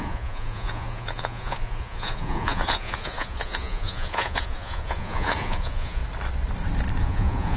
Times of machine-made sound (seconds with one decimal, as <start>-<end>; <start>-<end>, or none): 0.0-6.0; 7.0-7.6